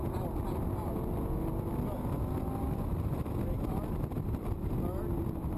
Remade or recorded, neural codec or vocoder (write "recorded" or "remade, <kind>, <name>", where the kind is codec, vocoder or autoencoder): recorded